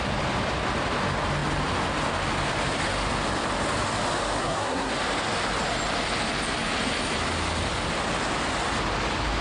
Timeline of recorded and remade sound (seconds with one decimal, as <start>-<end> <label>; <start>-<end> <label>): 0.0-4.4 recorded; 4.4-4.9 remade; 4.9-9.4 recorded